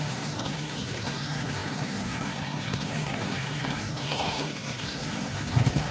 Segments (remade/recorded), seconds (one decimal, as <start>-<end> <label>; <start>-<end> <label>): 0.0-5.9 remade